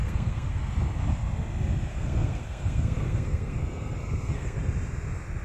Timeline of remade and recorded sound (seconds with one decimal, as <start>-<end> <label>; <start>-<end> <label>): 0.0-0.7 remade; 0.7-1.9 recorded; 1.9-4.6 remade; 4.6-5.4 recorded